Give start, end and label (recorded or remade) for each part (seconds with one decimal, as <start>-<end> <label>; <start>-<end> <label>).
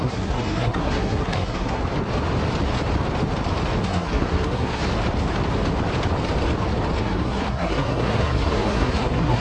0.0-1.8 remade; 1.8-3.8 recorded; 3.8-4.8 remade; 4.8-7.0 recorded; 7.0-9.4 remade